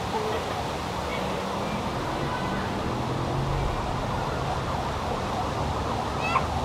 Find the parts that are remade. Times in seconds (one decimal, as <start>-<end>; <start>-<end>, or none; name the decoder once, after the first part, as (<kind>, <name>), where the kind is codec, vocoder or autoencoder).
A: none